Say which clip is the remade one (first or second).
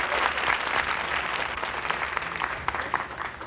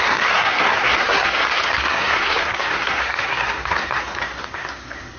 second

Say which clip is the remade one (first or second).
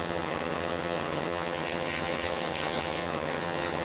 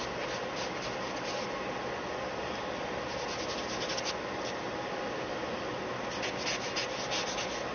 first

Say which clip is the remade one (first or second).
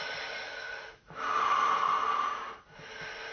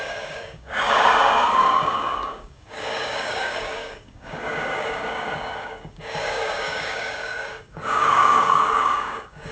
second